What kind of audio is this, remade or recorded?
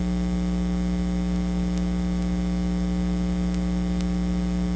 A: recorded